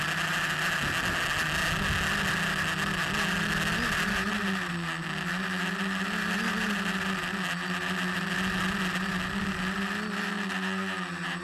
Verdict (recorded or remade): recorded